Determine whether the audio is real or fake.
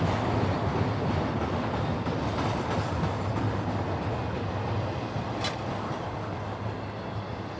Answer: real